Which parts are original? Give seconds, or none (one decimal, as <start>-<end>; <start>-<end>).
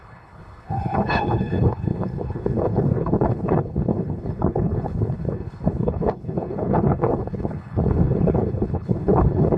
none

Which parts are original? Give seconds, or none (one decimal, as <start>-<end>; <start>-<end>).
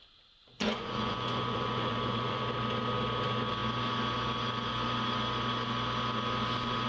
0.0-0.4; 2.4-6.9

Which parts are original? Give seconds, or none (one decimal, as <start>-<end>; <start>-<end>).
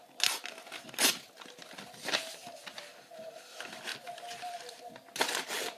0.0-5.8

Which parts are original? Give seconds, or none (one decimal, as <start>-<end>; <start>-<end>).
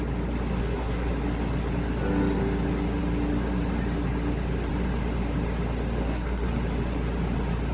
0.0-0.6; 1.1-6.0; 6.5-7.7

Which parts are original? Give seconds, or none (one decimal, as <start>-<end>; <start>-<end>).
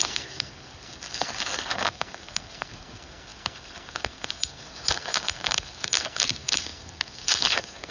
none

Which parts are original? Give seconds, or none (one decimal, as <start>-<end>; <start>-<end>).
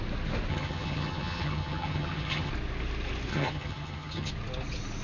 0.0-0.5; 2.5-3.3; 4.3-5.0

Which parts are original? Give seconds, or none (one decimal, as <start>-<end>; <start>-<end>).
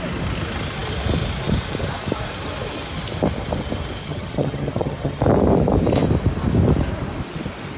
0.0-4.0; 5.2-7.8